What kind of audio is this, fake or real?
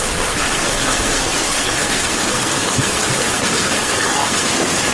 fake